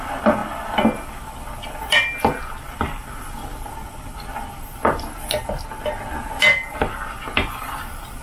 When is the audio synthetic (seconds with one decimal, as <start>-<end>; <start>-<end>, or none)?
none

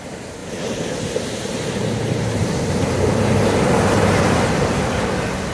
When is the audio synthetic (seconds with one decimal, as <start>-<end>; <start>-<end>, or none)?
0.4-3.5

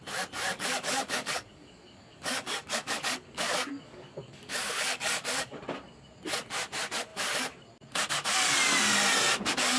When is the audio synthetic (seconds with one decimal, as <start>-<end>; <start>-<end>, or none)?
0.5-5.6

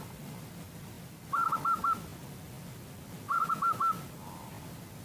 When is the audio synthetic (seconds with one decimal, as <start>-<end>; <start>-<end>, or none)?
2.2-3.5

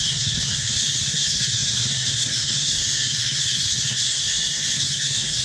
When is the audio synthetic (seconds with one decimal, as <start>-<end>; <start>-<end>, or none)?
0.0-5.4

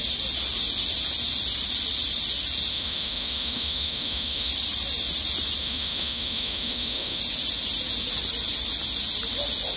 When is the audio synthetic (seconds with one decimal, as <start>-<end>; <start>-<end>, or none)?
2.7-4.5; 5.6-7.2